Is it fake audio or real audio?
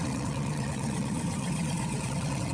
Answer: fake